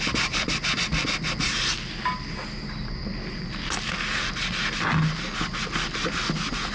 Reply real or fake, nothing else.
real